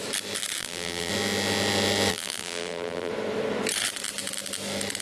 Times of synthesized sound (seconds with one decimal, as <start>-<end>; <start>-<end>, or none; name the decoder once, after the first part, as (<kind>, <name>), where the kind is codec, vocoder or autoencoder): 0.6-1.1 (vocoder, BigVGAN v2); 2.1-3.1